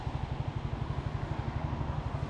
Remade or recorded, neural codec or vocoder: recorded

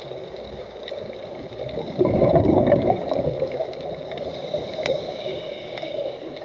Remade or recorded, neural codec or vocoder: remade, codec, DAC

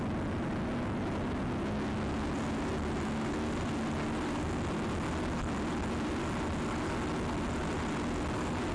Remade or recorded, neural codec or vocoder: recorded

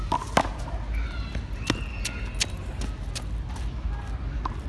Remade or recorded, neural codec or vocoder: recorded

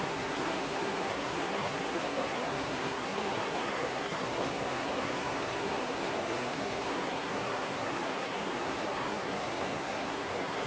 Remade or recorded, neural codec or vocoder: remade, codec, SNAC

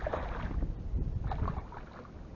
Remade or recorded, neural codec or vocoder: recorded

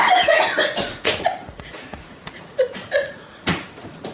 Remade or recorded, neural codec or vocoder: remade, vocoder, Vocos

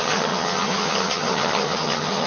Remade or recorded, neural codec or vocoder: remade, vocoder, HiFi-GAN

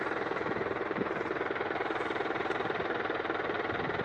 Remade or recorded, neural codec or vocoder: remade, vocoder, BigVGAN v2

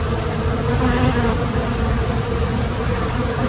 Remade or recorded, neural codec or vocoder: recorded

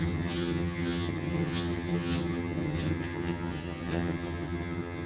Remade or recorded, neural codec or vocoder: remade, vocoder, HiFi-GAN